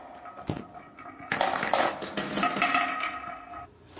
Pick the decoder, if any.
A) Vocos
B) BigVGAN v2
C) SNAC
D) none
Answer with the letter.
D